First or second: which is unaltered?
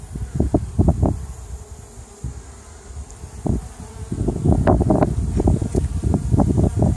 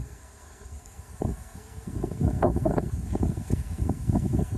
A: first